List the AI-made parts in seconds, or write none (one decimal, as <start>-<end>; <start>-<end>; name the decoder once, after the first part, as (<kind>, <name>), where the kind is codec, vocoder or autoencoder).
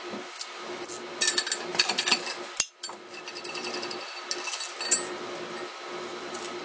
none